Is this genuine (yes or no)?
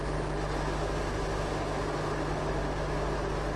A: yes